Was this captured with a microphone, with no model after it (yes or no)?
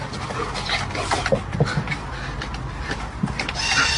yes